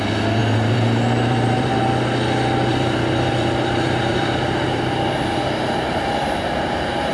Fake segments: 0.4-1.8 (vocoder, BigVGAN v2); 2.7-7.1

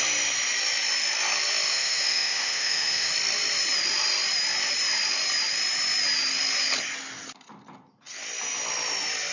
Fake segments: 1.7-3.1 (autoencoder, DAC-VAE)

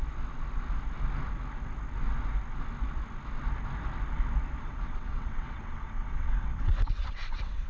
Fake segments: 4.6-7.7 (vocoder, WaveNeXt)

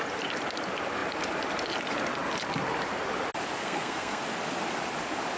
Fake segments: 3.6-4.2 (codec, SNAC)

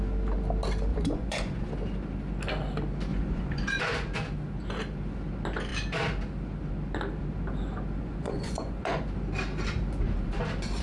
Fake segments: 0.9-1.7 (vocoder, Vocos); 3.1-3.8; 8.0-9.0

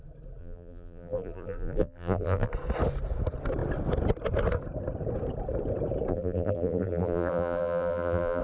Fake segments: 0.4-2.5 (vocoder, BigVGAN v2); 6.1-8.4

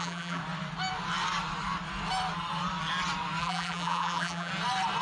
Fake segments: 0.0-0.4 (vocoder, BigVGAN v2); 3.4-4.5

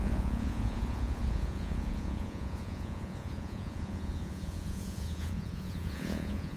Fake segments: 0.0-6.6 (vocoder, Vocos)